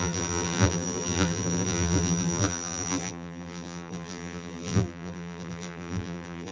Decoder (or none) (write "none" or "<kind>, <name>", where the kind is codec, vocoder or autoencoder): vocoder, BigVGAN v2